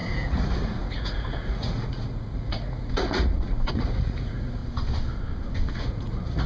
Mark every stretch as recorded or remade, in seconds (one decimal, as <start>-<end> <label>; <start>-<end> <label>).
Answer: 0.0-4.6 remade; 4.6-5.7 recorded; 5.7-6.5 remade